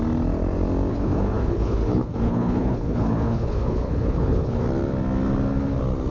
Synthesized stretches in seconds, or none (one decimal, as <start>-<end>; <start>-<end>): 0.9-4.6